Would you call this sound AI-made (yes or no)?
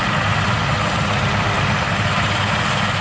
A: no